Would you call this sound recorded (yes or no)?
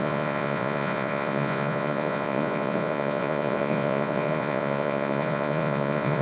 no